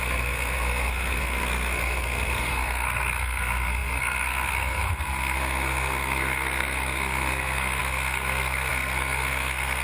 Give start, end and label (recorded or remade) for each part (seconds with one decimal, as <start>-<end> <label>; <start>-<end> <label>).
0.0-9.8 remade